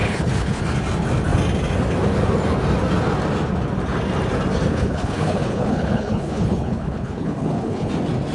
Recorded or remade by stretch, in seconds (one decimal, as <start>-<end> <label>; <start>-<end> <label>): 0.0-0.6 remade; 0.6-4.7 recorded; 4.7-7.9 remade; 7.9-8.3 recorded